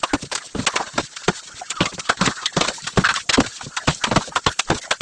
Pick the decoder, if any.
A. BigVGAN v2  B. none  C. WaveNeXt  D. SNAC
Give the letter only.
B